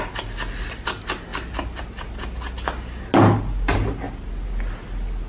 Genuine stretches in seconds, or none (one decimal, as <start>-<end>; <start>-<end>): 0.0-5.3

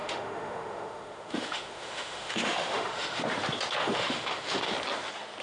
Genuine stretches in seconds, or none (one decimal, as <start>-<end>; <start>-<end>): 3.2-3.8; 4.7-5.4

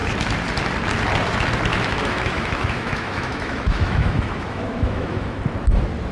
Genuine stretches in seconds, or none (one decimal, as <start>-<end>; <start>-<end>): 0.0-1.7; 5.4-6.1

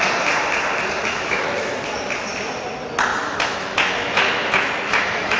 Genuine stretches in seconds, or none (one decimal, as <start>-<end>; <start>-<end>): 0.0-1.0; 1.7-3.1

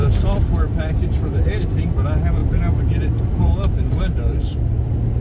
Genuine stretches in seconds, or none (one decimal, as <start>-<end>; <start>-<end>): 0.0-5.2

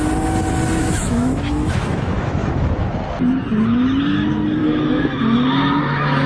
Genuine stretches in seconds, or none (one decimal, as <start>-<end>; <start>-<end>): 0.0-0.8; 2.9-4.6; 5.2-6.3